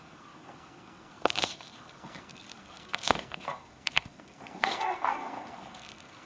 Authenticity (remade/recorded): remade